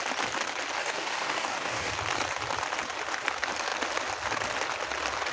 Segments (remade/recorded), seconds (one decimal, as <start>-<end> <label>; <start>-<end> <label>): 0.0-0.8 recorded; 0.8-1.9 remade; 1.9-5.3 recorded